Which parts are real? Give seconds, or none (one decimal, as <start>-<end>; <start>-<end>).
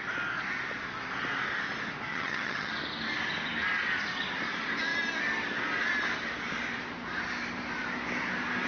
0.0-2.1; 2.7-8.7